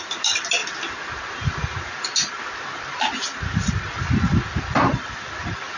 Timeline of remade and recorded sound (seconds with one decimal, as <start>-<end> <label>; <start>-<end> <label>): 0.0-5.8 recorded